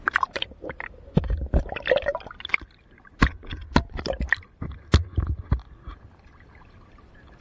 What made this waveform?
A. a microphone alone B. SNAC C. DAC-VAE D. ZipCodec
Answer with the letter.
A